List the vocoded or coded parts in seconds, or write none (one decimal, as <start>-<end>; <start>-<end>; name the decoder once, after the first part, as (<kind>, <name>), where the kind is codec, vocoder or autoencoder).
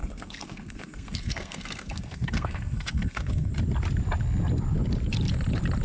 0.0-3.5 (codec, SNAC)